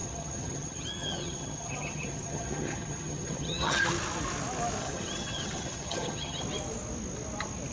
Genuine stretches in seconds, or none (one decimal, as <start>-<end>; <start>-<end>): 3.8-4.8; 6.4-7.7

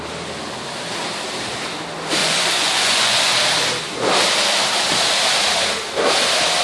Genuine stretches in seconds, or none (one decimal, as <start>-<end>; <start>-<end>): 0.0-2.2; 3.3-6.6

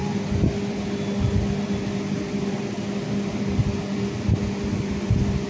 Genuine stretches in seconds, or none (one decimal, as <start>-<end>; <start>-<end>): 0.0-5.5

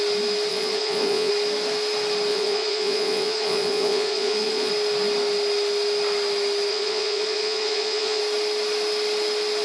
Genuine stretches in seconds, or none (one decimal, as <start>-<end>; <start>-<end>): 0.0-0.5; 1.3-2.3; 4.7-6.7; 8.2-9.6

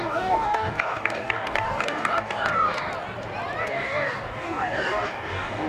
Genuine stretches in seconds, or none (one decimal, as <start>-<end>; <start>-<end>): 2.9-3.6

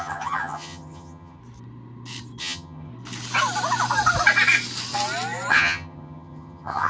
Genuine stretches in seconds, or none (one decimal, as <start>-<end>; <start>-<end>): 1.4-2.4; 2.9-5.5